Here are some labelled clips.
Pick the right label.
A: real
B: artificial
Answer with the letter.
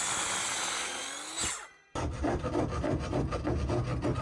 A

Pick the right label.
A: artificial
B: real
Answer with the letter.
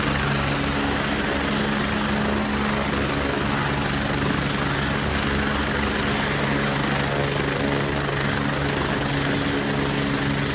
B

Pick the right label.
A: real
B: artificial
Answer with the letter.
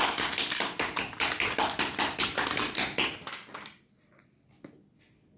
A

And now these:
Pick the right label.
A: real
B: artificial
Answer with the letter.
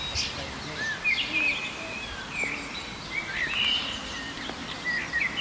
A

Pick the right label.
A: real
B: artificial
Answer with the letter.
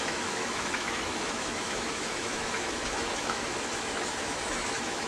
B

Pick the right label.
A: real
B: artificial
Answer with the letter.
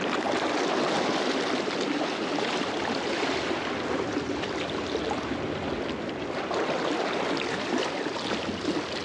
A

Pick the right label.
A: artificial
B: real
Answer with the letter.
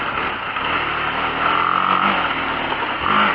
B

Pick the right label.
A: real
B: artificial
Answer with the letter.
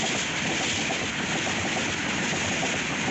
A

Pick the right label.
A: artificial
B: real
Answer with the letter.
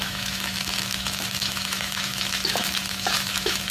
A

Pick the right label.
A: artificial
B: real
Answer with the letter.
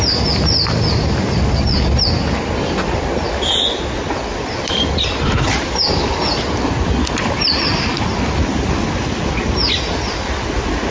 B